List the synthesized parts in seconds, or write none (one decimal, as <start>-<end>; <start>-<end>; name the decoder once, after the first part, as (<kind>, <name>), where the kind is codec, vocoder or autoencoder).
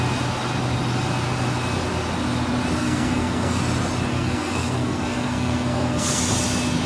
2.8-3.6 (codec, SNAC); 4.1-6.2